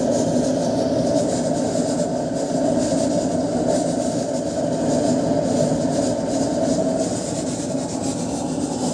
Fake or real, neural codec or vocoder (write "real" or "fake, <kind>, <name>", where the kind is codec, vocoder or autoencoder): real